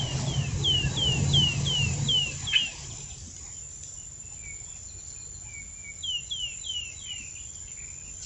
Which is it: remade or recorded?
recorded